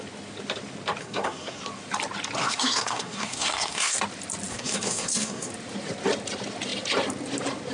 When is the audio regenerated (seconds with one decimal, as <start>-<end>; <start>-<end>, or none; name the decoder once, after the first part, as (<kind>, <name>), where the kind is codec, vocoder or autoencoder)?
1.0-1.6 (codec, SNAC); 2.4-4.0; 4.5-5.5